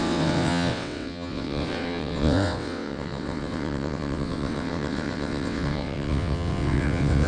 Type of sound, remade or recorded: remade